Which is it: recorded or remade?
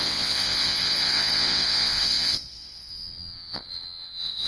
remade